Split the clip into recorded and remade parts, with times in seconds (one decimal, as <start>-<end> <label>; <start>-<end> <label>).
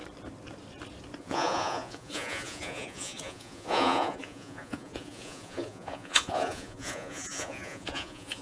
0.0-1.2 recorded; 1.2-8.4 remade